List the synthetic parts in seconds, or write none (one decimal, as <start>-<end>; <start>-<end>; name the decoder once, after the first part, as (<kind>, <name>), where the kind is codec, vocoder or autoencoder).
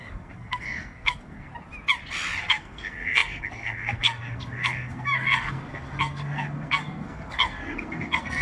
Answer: 0.0-1.5 (codec, SNAC); 2.4-8.4